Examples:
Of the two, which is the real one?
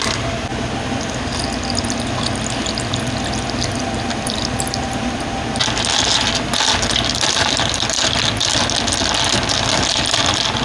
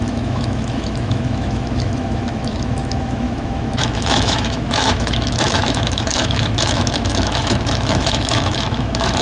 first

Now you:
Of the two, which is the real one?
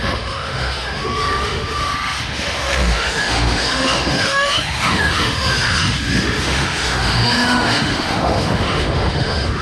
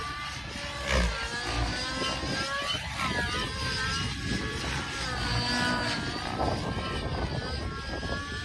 second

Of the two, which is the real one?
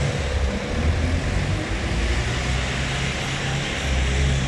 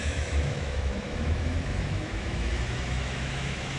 first